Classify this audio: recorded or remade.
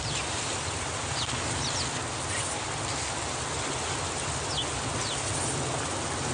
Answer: recorded